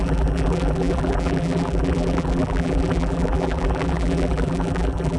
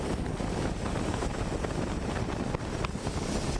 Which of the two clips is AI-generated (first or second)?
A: first